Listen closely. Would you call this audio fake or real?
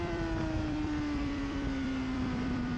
fake